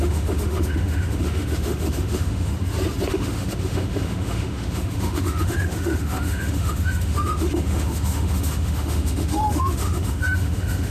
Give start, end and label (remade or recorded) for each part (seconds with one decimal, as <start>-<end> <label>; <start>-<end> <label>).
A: 0.0-2.5 remade; 2.5-3.1 recorded; 3.1-10.9 remade